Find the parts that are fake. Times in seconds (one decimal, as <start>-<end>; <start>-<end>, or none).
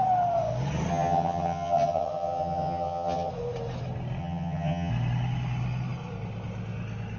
0.9-3.3; 4.2-4.9